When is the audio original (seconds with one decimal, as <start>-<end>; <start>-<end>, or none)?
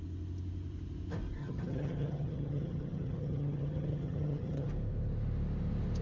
0.0-1.4; 4.7-6.0